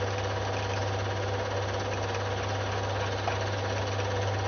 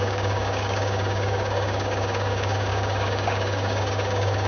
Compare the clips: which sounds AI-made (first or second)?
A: second